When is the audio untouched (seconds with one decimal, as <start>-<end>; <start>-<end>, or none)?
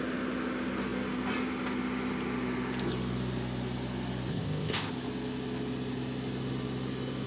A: 0.0-4.3; 4.9-7.3